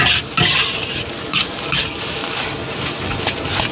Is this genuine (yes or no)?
yes